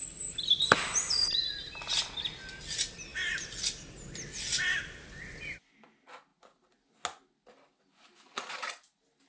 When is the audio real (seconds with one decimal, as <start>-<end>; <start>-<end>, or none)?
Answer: 0.0-9.3